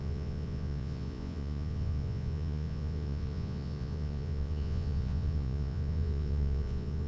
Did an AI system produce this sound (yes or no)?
yes